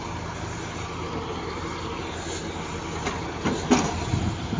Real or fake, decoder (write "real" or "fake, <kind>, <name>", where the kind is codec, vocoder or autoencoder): real